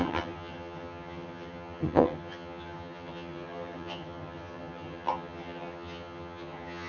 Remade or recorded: remade